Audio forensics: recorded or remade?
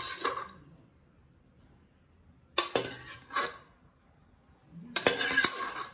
recorded